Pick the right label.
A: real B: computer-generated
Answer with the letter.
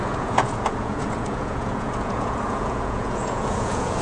B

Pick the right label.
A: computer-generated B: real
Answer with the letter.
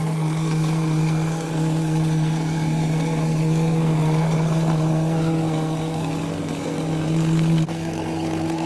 A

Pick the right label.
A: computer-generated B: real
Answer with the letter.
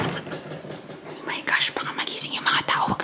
B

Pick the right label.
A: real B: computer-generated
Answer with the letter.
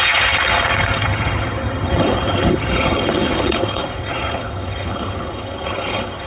B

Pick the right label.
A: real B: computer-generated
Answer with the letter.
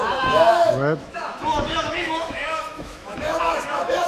B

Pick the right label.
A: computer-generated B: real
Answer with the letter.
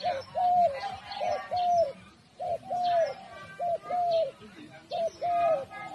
A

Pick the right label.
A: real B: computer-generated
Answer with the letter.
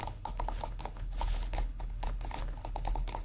B